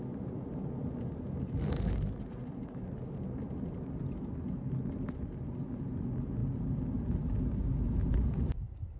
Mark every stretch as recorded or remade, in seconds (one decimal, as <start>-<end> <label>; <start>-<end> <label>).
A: 0.0-9.0 recorded